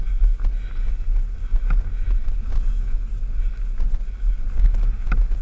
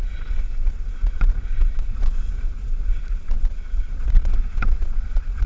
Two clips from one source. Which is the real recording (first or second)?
first